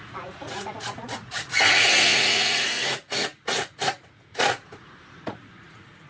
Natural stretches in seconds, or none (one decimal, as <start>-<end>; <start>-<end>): none